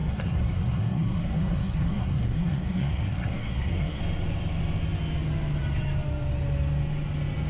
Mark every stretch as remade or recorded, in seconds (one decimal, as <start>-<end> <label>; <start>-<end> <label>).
0.0-4.0 remade; 4.0-7.5 recorded